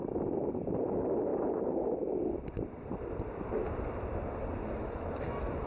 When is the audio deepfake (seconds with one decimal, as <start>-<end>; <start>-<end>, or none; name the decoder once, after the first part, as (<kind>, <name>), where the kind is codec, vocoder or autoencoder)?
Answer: none

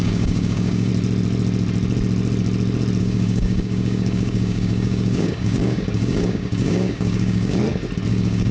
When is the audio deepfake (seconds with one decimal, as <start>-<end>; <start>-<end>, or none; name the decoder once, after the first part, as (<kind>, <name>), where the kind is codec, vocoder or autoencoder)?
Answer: 0.0-0.9 (codec, DAC); 3.0-7.6; 8.1-8.5

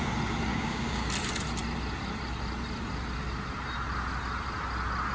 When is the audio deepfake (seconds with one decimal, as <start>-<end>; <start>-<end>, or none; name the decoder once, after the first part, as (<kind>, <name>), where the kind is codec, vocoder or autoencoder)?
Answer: 0.5-1.1 (codec, DAC)